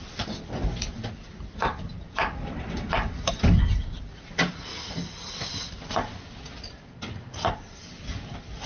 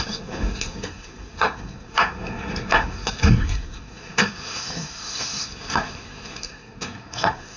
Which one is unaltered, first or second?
first